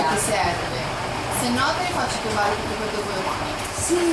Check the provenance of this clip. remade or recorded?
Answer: recorded